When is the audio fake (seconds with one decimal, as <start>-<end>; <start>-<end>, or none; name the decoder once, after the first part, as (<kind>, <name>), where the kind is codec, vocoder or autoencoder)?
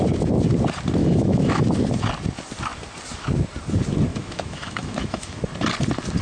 1.0-1.6 (autoencoder, DAC-VAE); 4.1-5.4